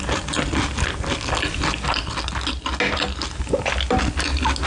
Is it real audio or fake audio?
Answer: real